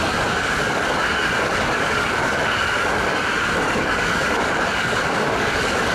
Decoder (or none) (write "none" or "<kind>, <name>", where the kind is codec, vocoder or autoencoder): codec, DAC